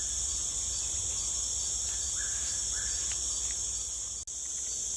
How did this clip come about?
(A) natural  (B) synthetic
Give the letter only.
A